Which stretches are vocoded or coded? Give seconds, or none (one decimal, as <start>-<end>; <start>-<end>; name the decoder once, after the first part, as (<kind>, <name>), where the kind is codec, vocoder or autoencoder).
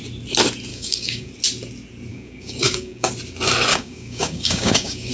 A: 0.7-1.3 (codec, DAC); 2.1-3.1; 3.7-5.1